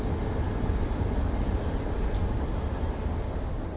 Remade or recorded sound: recorded